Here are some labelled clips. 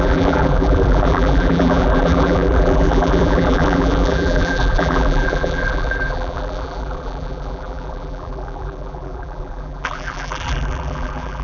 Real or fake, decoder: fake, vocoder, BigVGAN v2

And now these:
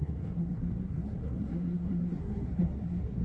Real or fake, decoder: fake, codec, SNAC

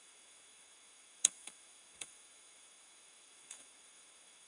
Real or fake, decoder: fake, autoencoder, DAC-VAE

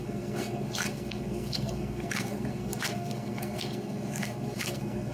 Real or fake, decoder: fake, codec, SNAC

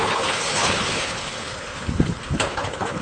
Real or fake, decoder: fake, codec, HILCodec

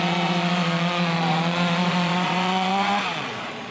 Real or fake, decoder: fake, vocoder, Vocos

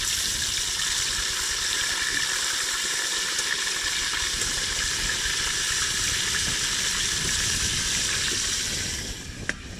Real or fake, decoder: real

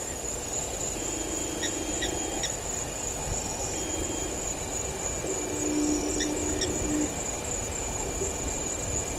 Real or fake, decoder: real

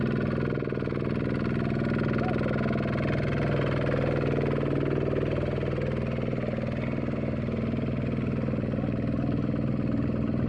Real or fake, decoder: real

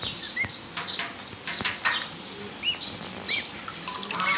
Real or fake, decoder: real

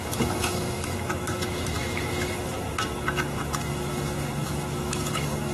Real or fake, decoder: fake, autoencoder, DAC-VAE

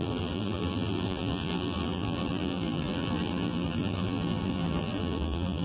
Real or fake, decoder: fake, vocoder, BigVGAN v2